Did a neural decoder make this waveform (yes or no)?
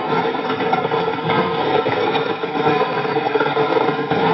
yes